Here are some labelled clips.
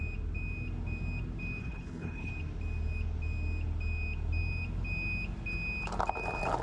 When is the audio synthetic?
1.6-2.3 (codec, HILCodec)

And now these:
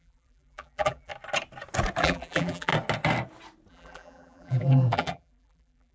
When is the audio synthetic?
0.0-1.1 (vocoder, BigVGAN v2); 2.0-2.7; 3.7-5.9

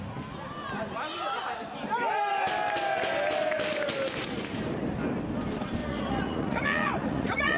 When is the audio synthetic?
5.8-7.6 (vocoder, Vocos)

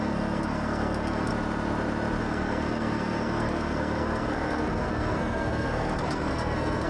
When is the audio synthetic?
0.0-1.3 (codec, SNAC); 2.2-6.9